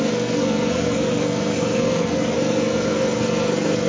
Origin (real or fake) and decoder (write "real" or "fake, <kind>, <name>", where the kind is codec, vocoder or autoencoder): fake, codec, SNAC